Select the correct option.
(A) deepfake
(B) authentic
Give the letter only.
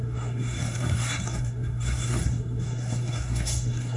A